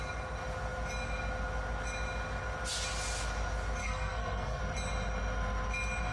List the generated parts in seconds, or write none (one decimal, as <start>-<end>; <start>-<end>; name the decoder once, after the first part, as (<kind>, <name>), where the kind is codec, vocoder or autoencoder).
3.8-4.6 (codec, SNAC)